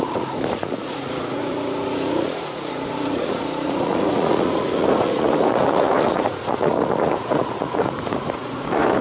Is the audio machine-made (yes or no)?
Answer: yes